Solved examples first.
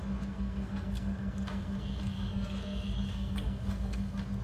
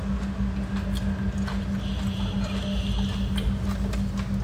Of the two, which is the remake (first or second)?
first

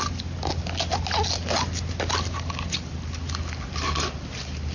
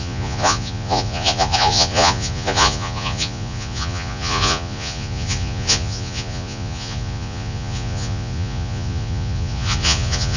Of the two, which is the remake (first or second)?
second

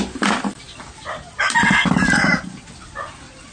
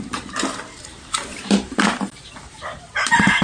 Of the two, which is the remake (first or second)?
second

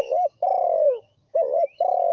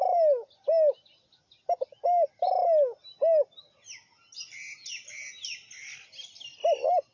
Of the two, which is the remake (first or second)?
first